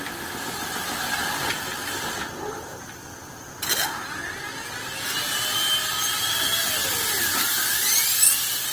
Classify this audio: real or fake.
real